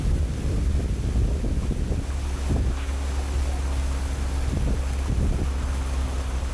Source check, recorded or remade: recorded